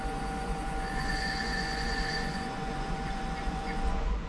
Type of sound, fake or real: fake